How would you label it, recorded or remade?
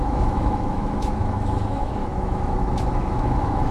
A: remade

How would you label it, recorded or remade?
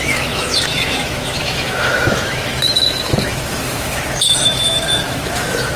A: remade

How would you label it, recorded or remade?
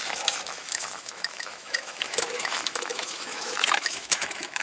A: remade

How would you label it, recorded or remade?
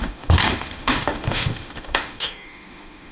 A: remade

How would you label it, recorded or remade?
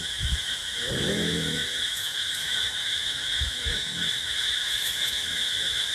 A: remade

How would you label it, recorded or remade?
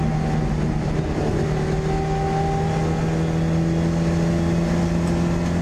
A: recorded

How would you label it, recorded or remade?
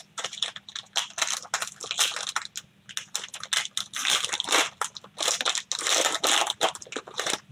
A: recorded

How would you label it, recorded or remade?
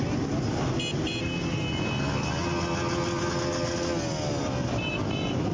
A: recorded